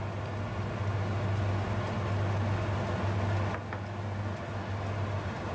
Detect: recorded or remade recorded